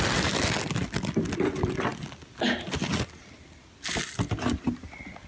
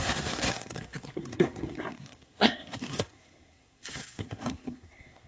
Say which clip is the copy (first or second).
second